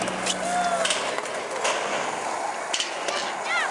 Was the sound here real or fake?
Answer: real